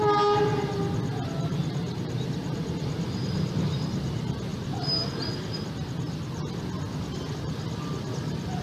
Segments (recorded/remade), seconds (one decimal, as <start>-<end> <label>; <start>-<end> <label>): 0.0-8.6 recorded